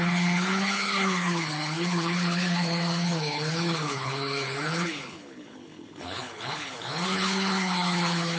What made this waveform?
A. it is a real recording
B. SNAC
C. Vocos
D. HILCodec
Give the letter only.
D